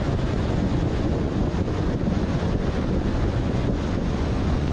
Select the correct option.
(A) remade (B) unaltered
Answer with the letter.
A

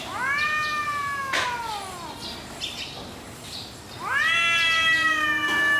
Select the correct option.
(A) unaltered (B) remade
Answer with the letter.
A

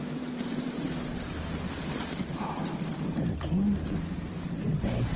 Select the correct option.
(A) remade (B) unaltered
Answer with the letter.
A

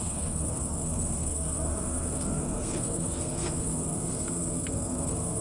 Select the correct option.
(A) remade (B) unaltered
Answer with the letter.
A